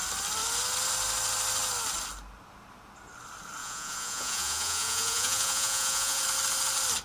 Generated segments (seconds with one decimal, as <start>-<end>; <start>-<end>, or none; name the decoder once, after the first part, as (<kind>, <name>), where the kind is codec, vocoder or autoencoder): 3.6-6.2 (vocoder, Vocos)